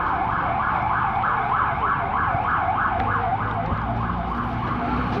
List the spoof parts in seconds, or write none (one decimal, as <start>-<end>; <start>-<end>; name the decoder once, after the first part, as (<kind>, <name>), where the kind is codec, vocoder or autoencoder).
none